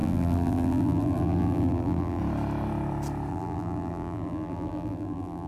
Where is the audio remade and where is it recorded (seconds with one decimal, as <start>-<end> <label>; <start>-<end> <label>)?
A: 0.0-2.2 remade; 2.2-3.3 recorded; 3.3-5.5 remade